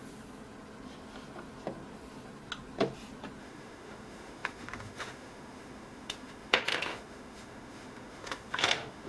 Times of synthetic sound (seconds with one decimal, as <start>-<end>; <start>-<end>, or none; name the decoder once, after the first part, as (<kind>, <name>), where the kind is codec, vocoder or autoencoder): 3.4-9.1 (autoencoder, DAC-VAE)